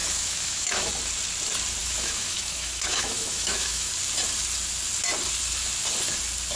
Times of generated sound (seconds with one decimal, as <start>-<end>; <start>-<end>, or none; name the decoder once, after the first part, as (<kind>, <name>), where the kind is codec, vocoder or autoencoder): 0.0-0.9 (autoencoder, DAC-VAE); 1.8-3.9